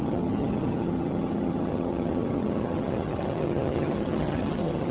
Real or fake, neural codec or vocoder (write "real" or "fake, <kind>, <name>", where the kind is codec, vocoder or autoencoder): fake, vocoder, HiFi-GAN